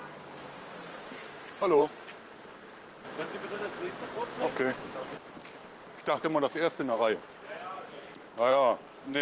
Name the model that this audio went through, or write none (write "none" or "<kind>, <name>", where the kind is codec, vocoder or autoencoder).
vocoder, BigVGAN v2